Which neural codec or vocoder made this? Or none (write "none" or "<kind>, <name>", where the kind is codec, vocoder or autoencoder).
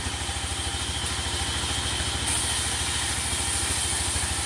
none